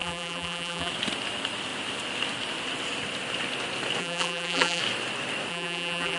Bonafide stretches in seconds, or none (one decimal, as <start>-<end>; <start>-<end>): 0.9-4.0; 4.8-5.5